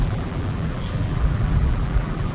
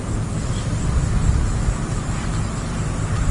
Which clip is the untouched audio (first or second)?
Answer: second